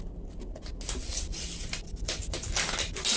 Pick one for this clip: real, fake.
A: real